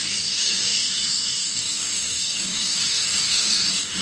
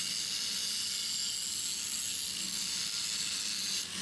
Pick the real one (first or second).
second